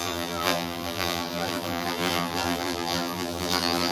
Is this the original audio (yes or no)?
no